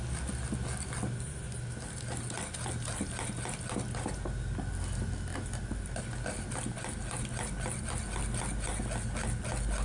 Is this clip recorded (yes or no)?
yes